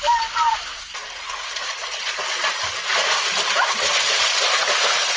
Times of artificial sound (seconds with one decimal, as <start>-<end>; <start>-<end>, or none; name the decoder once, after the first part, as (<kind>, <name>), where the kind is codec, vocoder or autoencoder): none